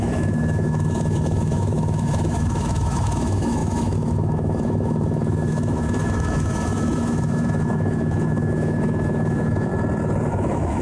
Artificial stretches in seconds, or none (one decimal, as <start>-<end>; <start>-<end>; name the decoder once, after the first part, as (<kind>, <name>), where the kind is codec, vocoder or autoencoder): 0.0-9.7 (autoencoder, DAC-VAE); 10.3-10.8